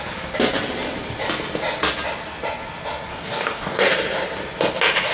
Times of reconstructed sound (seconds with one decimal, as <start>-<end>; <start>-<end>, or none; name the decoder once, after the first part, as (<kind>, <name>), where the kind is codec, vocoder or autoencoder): 3.1-3.9 (codec, DAC)